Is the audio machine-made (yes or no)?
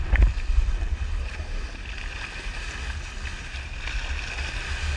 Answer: no